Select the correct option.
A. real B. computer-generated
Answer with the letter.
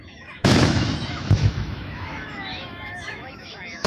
B